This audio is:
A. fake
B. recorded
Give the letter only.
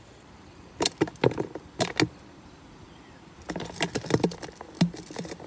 B